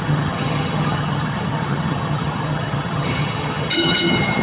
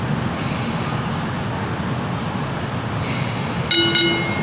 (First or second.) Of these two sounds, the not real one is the first